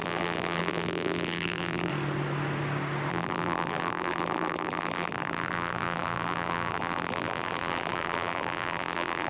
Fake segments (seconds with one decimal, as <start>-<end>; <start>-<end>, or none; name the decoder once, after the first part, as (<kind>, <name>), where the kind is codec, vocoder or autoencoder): 0.0-1.9 (vocoder, BigVGAN v2); 3.1-9.3